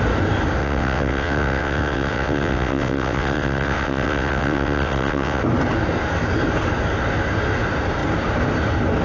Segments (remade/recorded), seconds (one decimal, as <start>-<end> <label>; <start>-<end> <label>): 0.0-0.6 recorded; 0.6-5.4 remade; 5.4-9.0 recorded